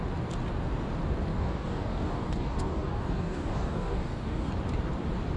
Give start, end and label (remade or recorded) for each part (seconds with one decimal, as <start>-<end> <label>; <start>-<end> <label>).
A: 0.0-1.3 recorded; 1.3-4.5 remade; 4.5-5.4 recorded